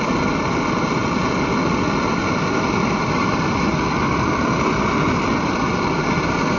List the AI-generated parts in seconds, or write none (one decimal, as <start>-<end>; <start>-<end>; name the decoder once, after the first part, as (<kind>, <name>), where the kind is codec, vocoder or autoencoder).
none